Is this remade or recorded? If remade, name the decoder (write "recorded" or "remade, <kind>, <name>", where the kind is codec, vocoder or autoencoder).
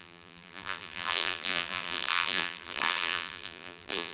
remade, vocoder, BigVGAN v2